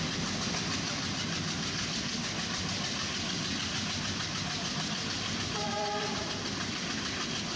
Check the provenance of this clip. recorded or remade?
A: remade